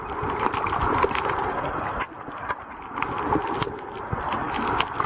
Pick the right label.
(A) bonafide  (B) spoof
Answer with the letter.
A